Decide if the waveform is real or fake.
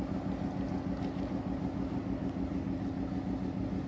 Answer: real